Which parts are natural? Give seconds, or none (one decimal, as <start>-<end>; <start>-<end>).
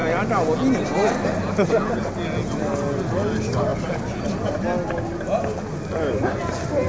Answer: 0.0-6.9